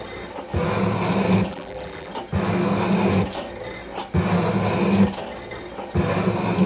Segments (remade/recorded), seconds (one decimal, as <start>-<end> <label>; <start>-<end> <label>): 0.0-1.5 recorded; 1.5-2.1 remade; 2.1-6.7 recorded